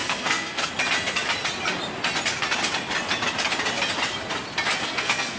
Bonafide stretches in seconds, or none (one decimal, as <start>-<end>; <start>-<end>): 0.7-4.8